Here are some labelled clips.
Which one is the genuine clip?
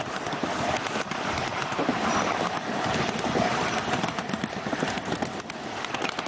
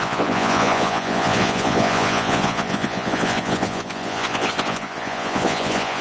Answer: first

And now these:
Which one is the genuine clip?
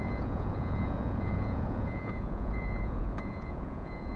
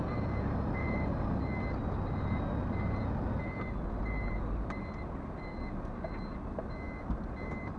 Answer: second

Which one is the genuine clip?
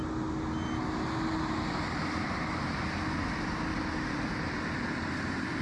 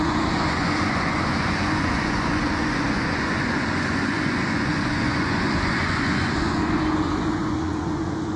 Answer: first